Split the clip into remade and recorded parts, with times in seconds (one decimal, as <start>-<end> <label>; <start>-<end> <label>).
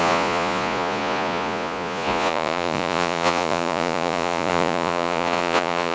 0.0-5.9 remade